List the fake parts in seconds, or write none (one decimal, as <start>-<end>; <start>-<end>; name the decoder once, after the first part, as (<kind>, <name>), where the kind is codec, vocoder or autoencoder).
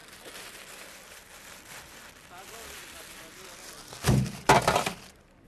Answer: 2.8-5.0 (vocoder, BigVGAN v2)